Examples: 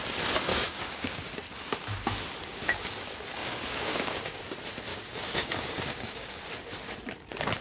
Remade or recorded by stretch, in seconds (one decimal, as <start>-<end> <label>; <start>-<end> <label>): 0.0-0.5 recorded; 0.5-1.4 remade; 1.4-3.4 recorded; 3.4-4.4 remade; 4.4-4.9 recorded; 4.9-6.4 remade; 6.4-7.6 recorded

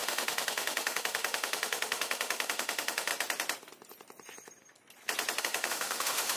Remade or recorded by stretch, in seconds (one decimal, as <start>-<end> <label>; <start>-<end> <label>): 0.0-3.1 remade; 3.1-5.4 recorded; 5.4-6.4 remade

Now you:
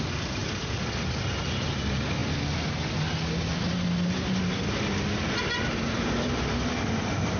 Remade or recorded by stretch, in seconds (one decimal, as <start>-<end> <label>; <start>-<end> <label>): 0.0-7.4 recorded

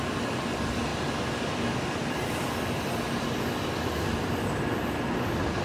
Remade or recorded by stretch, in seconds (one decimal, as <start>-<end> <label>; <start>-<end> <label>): 0.0-5.6 recorded